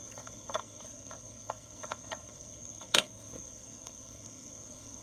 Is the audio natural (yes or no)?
no